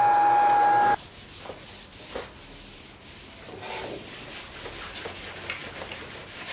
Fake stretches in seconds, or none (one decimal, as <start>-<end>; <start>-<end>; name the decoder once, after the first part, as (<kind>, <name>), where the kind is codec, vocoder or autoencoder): none